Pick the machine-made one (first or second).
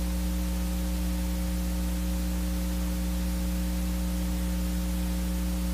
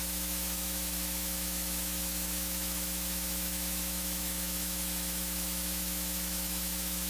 second